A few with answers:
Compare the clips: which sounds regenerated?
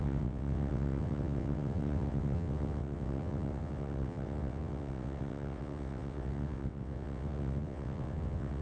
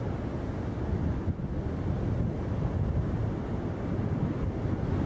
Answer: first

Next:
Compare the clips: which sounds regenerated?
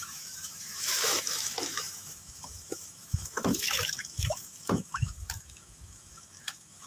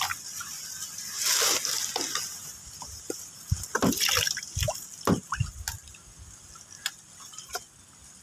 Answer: first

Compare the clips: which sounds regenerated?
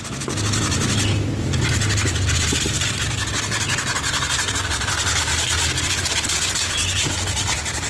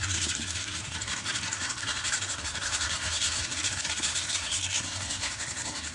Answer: second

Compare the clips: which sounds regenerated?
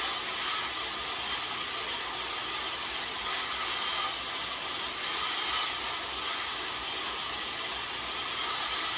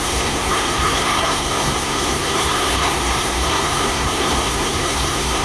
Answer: second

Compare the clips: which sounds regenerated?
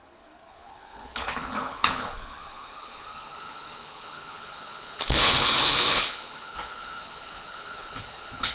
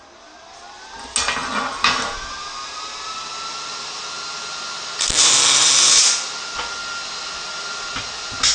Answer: first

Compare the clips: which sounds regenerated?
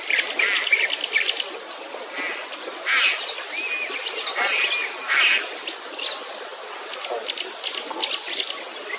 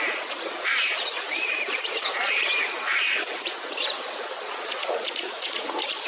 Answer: second